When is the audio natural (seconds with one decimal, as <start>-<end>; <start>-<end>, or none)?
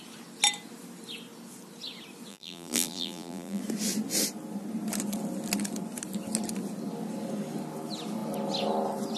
0.0-2.3; 3.6-9.2